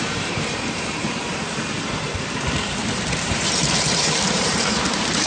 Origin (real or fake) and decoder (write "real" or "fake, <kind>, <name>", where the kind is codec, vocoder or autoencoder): fake, vocoder, BigVGAN v2